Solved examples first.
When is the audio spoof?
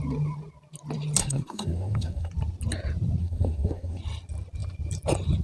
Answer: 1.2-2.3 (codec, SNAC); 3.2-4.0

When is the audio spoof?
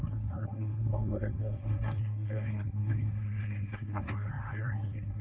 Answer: 0.0-5.2 (codec, SNAC)